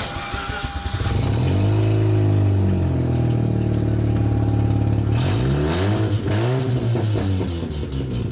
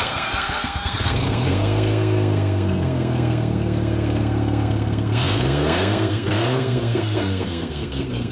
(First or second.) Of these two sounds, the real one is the first